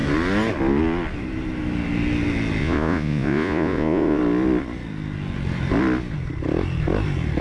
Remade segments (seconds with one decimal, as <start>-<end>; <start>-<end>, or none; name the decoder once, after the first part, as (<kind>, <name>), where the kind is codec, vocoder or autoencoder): 2.6-4.2 (vocoder, Vocos)